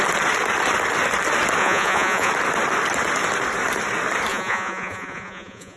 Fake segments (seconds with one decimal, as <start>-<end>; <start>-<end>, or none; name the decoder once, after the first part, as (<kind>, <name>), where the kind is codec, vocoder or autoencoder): 1.6-2.3 (vocoder, Vocos); 4.3-5.8